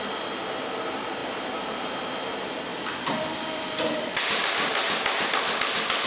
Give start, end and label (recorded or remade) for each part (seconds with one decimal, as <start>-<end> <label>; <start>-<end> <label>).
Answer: 0.0-2.7 recorded; 2.7-4.9 remade; 4.9-6.1 recorded